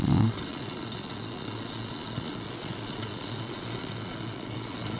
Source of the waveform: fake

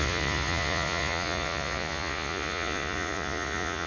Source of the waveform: fake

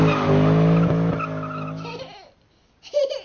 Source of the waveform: real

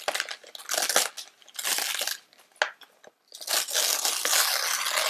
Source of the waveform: real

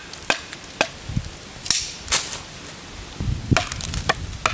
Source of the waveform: real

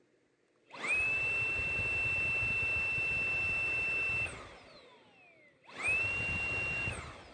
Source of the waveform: real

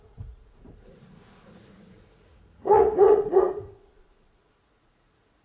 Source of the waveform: fake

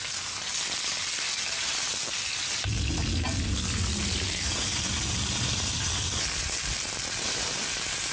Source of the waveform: real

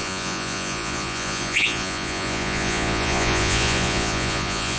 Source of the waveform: fake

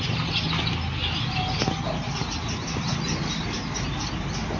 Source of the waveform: real